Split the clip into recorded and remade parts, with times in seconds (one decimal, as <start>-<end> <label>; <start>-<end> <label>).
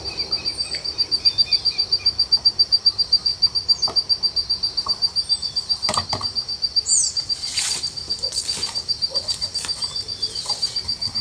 0.0-3.3 remade; 3.3-4.8 recorded; 4.8-11.2 remade